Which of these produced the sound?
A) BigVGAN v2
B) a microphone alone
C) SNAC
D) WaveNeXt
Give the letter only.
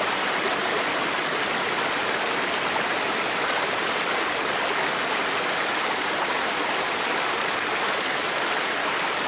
B